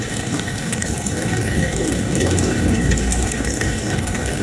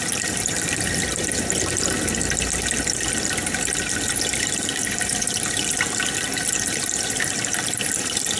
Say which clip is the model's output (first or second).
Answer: first